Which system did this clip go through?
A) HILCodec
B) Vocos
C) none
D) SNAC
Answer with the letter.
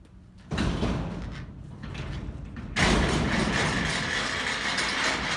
C